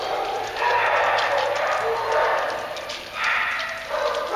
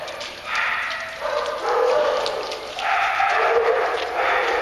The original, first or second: first